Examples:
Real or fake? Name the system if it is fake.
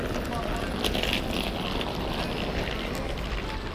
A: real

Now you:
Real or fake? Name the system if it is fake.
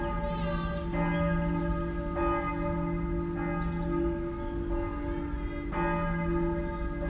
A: real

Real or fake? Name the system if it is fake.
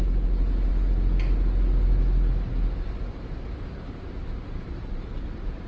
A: real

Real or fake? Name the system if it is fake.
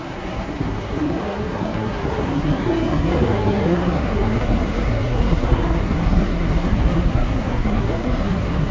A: fake, codec, SNAC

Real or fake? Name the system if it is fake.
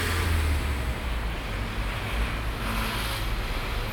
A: real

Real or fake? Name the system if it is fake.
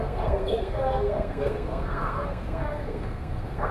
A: fake, codec, SNAC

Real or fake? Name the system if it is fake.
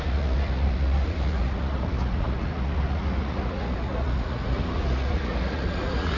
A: fake, vocoder, Vocos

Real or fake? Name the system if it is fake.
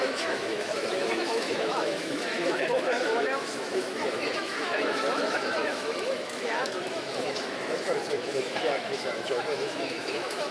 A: fake, autoencoder, DAC-VAE